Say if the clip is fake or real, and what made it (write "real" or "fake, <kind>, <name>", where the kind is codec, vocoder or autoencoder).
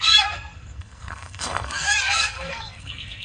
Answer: fake, codec, SNAC